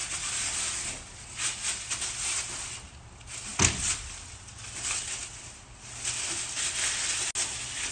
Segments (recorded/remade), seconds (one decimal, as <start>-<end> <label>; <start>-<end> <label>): 0.0-7.9 recorded